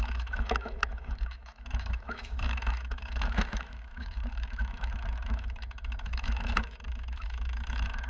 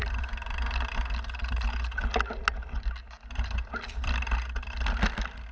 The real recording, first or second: second